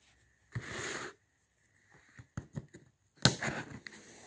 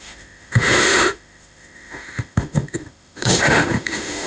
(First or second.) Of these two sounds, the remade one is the second